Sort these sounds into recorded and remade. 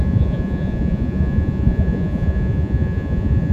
remade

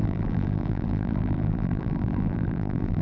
remade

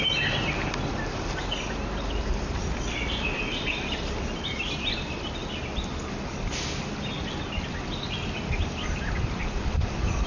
recorded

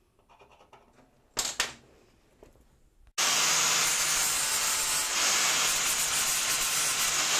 recorded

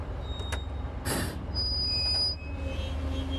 recorded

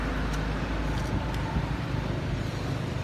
recorded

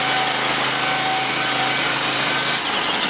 recorded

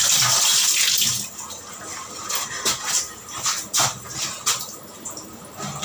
recorded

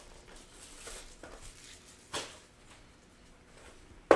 recorded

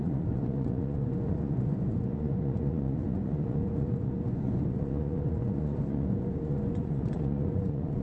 remade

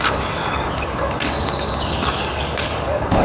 remade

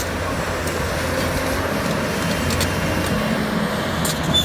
recorded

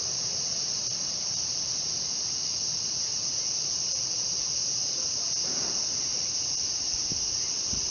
remade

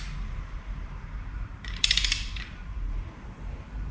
remade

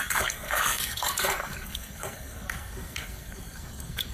remade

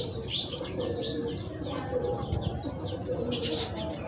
recorded